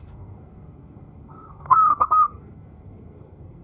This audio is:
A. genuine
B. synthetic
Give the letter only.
B